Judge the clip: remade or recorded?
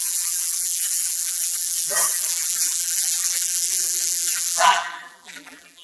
remade